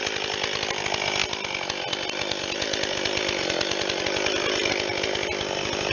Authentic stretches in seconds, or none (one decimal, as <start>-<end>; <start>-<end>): 0.0-5.9